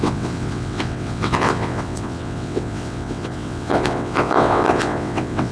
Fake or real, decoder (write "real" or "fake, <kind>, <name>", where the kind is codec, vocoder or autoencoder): fake, vocoder, WaveNeXt